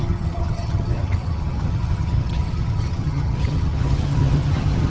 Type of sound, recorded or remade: remade